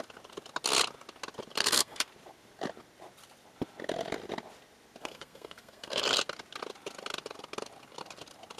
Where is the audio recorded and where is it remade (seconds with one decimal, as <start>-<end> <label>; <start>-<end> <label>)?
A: 0.0-1.6 recorded; 1.6-2.1 remade; 2.1-5.0 recorded; 5.0-6.0 remade; 6.0-8.6 recorded